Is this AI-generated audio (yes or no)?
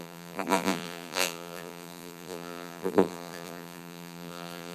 yes